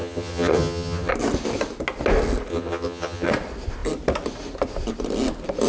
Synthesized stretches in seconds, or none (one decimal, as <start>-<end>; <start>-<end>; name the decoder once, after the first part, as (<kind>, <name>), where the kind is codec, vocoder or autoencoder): 0.0-1.1 (vocoder, HiFi-GAN); 2.5-3.3

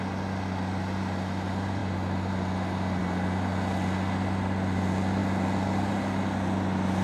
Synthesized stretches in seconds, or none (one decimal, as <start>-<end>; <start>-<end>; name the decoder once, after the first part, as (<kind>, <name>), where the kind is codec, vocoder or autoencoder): none

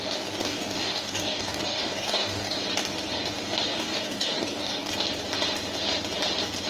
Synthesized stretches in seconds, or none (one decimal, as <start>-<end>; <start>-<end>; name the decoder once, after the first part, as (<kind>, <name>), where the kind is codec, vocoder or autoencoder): 0.4-2.6 (codec, DAC); 3.7-4.9

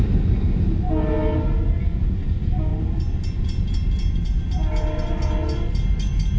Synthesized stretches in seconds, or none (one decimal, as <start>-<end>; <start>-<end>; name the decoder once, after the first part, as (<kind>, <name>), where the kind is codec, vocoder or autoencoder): none

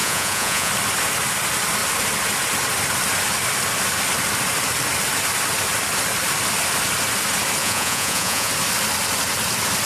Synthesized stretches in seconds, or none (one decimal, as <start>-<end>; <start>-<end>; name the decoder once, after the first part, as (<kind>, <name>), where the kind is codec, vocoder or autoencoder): 0.0-0.7 (vocoder, Vocos); 7.6-8.5

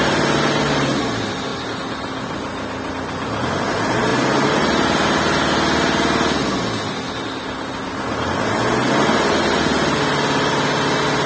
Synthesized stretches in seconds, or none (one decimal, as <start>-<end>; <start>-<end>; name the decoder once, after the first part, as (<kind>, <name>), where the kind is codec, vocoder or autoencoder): none

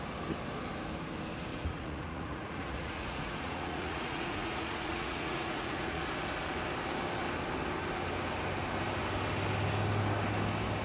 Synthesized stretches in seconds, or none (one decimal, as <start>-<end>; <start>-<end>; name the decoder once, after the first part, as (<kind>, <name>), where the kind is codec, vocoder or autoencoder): 1.5-6.0 (vocoder, Vocos)

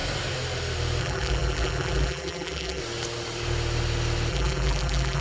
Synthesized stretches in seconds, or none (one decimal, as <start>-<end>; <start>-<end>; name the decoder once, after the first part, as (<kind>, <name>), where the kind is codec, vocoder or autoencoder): 1.0-2.8 (vocoder, BigVGAN v2); 4.3-5.2